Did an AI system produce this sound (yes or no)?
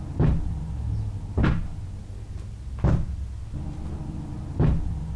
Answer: no